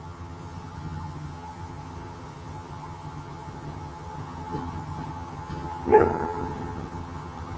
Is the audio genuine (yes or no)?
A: no